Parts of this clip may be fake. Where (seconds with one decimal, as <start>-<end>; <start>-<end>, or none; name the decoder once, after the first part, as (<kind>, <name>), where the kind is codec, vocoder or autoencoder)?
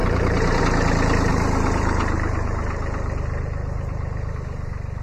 0.0-0.6 (vocoder, BigVGAN v2); 1.3-4.3